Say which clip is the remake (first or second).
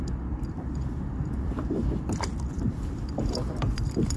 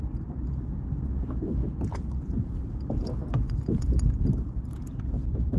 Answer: first